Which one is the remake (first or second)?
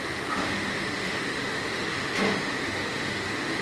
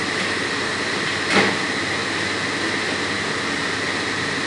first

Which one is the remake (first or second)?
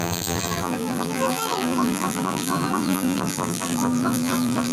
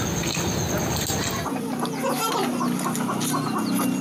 first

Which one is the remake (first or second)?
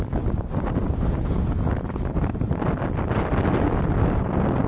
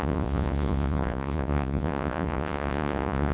second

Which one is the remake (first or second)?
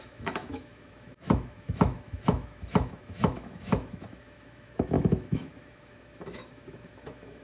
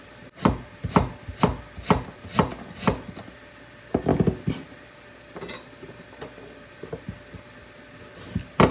first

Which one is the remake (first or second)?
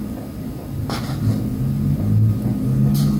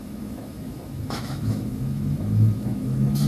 second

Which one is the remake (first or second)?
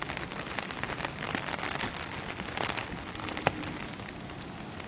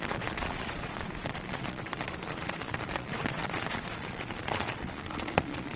second